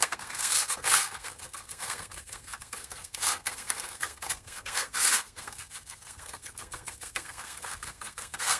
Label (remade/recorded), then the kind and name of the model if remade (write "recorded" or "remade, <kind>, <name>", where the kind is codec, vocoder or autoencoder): remade, codec, SNAC